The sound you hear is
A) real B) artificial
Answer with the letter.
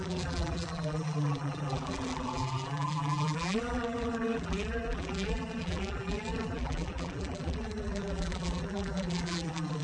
B